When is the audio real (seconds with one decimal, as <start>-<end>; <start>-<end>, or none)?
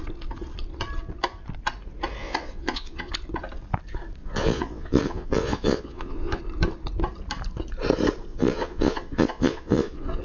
0.0-2.2; 3.1-4.2; 6.4-8.3